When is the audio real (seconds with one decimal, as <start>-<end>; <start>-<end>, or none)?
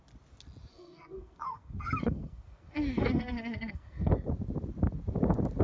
0.0-0.7; 4.1-5.6